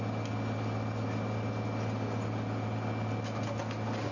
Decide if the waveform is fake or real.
real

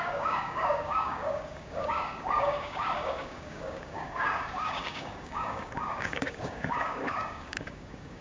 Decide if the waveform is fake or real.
fake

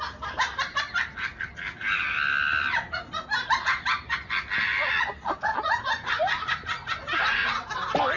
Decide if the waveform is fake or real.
real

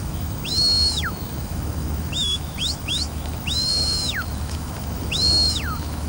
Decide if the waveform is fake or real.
fake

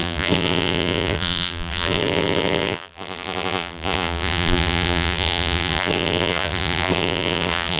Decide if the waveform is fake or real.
fake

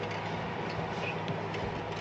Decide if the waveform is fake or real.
real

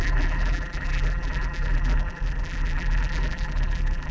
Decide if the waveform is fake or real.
fake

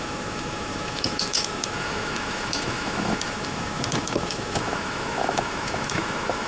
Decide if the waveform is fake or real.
fake